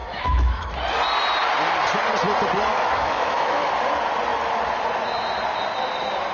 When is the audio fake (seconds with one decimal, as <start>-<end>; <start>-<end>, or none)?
0.0-0.7; 2.7-3.7